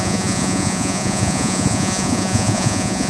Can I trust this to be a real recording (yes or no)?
no